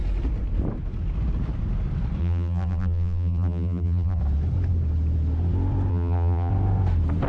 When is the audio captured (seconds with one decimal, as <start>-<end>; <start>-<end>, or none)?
0.0-2.2; 4.2-5.9; 6.5-7.3